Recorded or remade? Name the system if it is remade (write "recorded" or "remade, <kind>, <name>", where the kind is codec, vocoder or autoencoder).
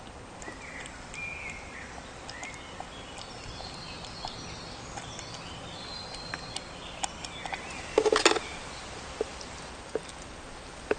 recorded